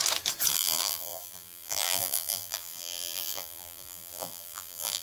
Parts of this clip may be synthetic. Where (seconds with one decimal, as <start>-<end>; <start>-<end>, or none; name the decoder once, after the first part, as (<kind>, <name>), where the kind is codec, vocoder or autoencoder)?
0.5-5.0 (vocoder, BigVGAN v2)